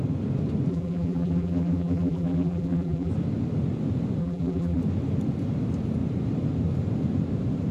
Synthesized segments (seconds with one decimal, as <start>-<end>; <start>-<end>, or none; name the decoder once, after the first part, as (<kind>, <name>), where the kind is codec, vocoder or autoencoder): 0.7-3.1 (vocoder, BigVGAN v2); 4.2-4.8